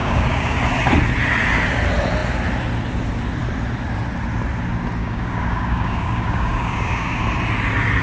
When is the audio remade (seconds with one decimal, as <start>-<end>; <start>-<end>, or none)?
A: 0.0-0.6; 5.0-7.2